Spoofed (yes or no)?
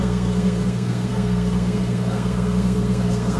yes